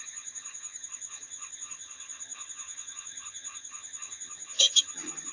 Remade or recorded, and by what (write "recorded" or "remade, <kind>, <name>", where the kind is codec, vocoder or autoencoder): remade, vocoder, HiFi-GAN